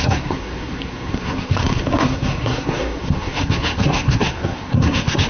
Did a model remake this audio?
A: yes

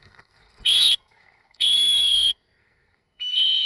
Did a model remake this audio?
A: yes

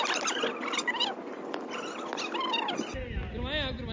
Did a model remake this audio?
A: no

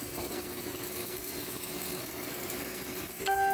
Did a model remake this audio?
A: yes